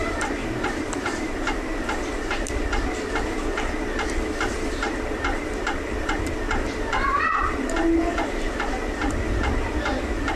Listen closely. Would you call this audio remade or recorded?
remade